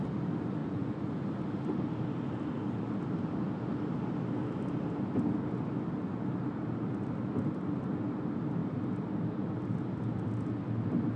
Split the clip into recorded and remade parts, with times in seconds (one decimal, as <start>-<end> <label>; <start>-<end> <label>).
0.0-0.6 recorded; 0.6-1.1 remade; 1.1-11.2 recorded